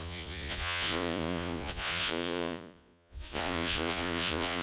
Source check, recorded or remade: remade